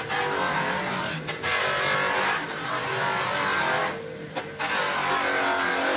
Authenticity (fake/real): real